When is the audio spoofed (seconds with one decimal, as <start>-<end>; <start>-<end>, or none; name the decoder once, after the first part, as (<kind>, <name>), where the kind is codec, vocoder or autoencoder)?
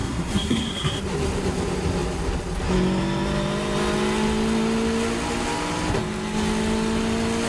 0.0-1.0 (codec, SNAC)